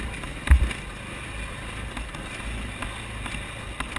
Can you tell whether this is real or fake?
real